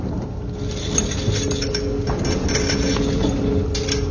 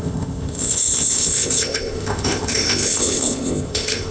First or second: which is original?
first